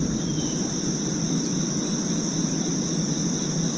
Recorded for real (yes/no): yes